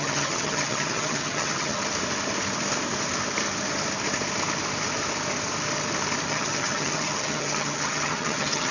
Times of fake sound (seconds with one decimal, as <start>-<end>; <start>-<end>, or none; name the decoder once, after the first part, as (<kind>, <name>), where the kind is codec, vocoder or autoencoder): 0.0-1.8 (vocoder, HiFi-GAN); 6.3-8.7